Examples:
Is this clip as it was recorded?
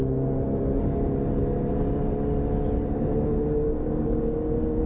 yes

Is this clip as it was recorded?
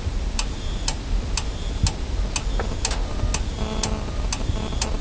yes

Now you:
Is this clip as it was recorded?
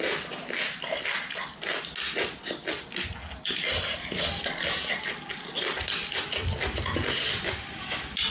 yes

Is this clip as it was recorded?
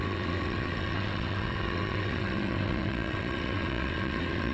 no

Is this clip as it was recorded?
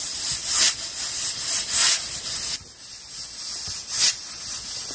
yes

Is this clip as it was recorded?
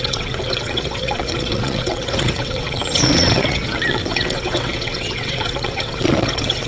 no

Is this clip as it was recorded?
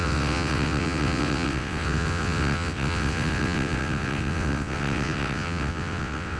no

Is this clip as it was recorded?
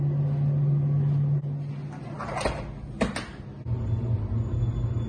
yes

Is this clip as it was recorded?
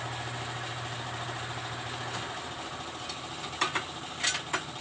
yes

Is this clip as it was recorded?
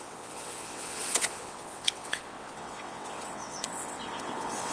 no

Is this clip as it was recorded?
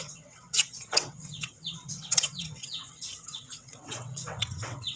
no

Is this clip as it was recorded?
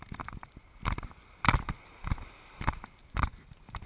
yes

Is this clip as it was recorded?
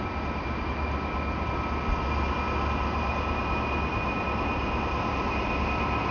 yes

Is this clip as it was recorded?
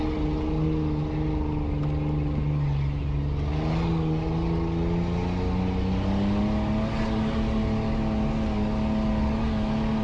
yes